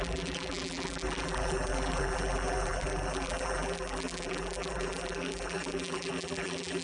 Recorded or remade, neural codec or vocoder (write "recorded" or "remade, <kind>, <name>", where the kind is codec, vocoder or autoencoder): remade, vocoder, BigVGAN v2